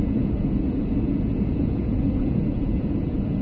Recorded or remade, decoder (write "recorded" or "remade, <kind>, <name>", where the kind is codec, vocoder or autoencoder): remade, vocoder, Vocos